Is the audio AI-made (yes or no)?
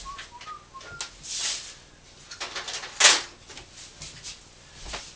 no